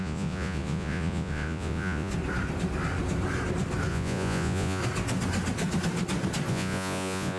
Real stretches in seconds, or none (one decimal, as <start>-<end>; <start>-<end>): 2.1-3.9; 4.8-6.5